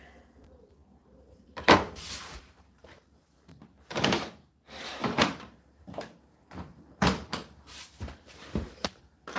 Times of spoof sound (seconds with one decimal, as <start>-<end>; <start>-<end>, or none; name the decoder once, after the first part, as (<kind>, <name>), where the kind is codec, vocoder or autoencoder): 1.0-3.6 (vocoder, BigVGAN v2); 5.0-9.0